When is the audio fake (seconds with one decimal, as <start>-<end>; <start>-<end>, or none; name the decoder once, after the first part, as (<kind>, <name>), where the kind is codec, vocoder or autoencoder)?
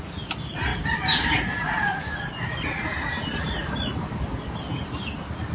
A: none